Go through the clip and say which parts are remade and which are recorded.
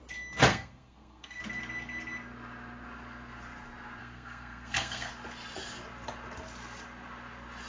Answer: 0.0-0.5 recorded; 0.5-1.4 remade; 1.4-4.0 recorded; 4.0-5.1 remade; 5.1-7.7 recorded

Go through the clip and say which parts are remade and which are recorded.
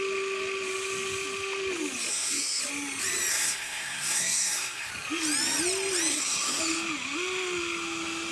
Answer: 0.0-2.1 recorded; 2.1-2.6 remade; 2.6-3.3 recorded; 3.3-4.9 remade; 4.9-6.1 recorded; 6.1-6.6 remade; 6.6-8.3 recorded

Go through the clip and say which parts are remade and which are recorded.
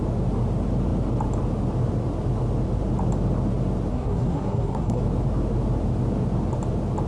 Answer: 0.0-3.9 recorded; 3.9-5.0 remade; 5.0-7.1 recorded